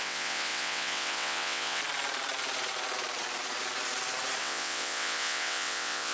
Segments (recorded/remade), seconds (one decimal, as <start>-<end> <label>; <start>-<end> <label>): 0.0-1.8 remade; 1.8-4.4 recorded; 4.4-6.1 remade

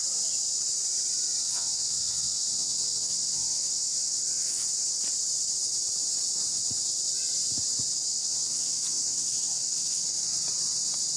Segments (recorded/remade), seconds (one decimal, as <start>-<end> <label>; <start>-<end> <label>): 0.0-1.4 recorded; 1.4-5.0 remade; 5.0-8.1 recorded; 8.1-10.0 remade; 10.0-11.2 recorded

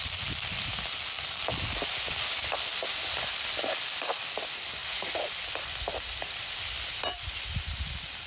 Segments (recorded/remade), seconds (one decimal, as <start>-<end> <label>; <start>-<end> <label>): 0.0-8.3 recorded

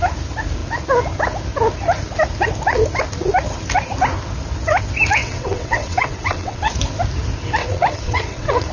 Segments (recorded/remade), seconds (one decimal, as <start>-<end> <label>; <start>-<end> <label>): 0.0-5.2 recorded; 5.2-6.7 remade; 6.7-7.6 recorded; 7.6-8.7 remade

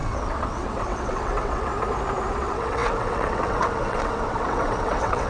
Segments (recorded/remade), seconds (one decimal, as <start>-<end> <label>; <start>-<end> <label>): 0.0-1.7 remade; 1.7-2.3 recorded; 2.3-5.3 remade

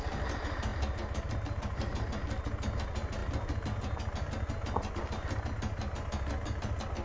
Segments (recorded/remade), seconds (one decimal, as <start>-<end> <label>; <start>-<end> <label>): 0.0-7.0 recorded

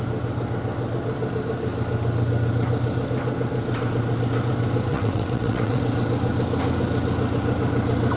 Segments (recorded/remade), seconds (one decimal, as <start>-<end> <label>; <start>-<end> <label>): 0.0-4.9 recorded; 4.9-5.8 remade; 5.8-8.2 recorded